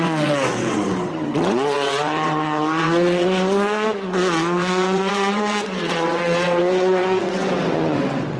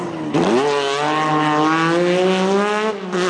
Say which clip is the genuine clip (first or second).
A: second